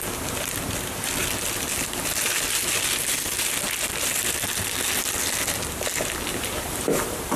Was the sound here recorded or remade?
recorded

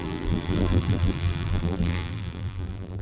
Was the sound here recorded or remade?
remade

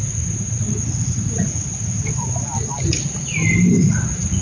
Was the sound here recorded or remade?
recorded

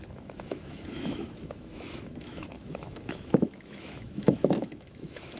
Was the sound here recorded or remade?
remade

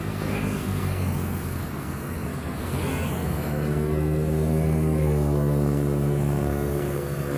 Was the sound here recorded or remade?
remade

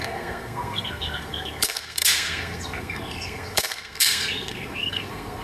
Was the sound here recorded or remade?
remade